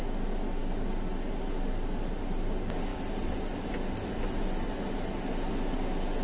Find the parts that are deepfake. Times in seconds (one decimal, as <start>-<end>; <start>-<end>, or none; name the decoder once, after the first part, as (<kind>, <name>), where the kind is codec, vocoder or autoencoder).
none

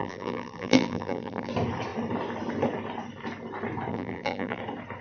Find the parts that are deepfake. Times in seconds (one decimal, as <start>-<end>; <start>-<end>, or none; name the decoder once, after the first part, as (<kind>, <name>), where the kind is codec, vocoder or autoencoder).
0.0-1.5 (vocoder, BigVGAN v2); 3.9-4.6

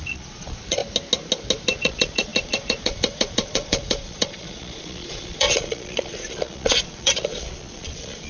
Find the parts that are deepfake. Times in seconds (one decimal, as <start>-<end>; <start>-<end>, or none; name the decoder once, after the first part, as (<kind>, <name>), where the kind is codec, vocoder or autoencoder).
0.0-0.8 (vocoder, Vocos); 1.8-8.3

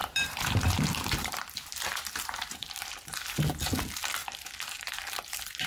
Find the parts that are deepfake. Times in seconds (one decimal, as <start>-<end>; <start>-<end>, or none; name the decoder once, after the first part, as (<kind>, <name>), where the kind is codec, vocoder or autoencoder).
0.0-3.4 (vocoder, BigVGAN v2); 4.2-5.7

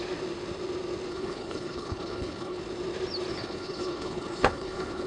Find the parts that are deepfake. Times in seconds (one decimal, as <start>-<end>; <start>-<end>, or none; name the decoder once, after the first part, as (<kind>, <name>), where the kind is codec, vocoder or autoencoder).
1.1-2.6 (codec, HILCodec); 3.3-5.1

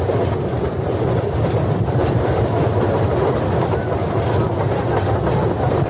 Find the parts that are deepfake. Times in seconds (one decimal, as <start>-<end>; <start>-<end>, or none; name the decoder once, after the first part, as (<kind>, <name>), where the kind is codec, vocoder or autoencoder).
none